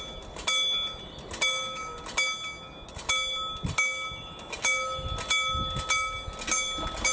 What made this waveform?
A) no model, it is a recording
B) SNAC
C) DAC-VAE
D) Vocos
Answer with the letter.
A